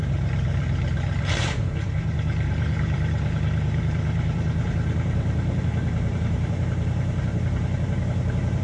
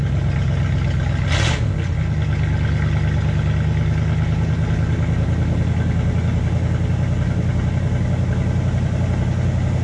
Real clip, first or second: second